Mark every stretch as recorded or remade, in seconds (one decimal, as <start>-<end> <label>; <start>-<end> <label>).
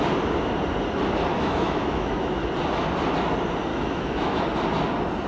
0.0-1.3 recorded; 1.3-2.5 remade; 2.5-3.7 recorded; 3.7-4.4 remade; 4.4-5.3 recorded